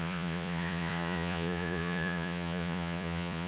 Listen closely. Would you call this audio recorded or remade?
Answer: remade